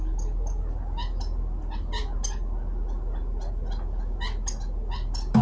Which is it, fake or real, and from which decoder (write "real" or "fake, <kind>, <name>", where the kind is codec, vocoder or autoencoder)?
real